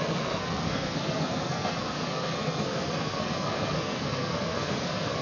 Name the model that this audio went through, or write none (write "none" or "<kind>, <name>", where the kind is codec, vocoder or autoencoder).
codec, SNAC